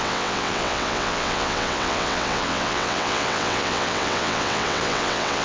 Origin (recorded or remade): remade